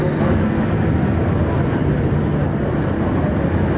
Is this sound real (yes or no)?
yes